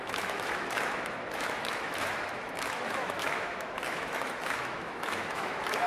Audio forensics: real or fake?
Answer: fake